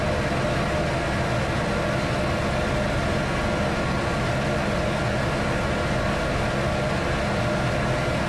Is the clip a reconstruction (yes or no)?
no